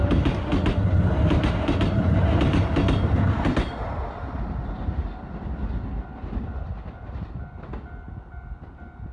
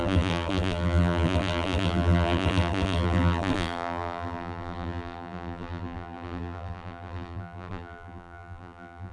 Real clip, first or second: first